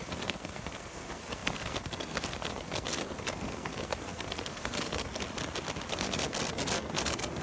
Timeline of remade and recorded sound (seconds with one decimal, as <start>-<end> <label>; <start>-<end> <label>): 0.0-5.2 remade; 5.2-5.9 recorded; 5.9-7.4 remade